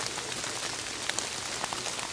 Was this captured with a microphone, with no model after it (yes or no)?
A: yes